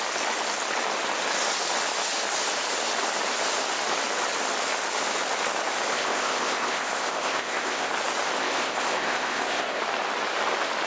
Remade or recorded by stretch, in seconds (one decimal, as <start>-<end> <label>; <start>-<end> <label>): 0.0-5.9 recorded; 5.9-7.9 remade; 7.9-8.4 recorded; 8.4-9.8 remade; 9.8-10.9 recorded